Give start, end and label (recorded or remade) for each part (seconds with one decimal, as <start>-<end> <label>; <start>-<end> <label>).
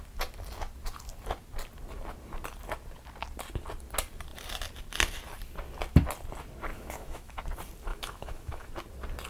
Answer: 0.0-6.7 recorded; 6.7-7.4 remade; 7.4-7.9 recorded; 7.9-8.7 remade; 8.7-9.3 recorded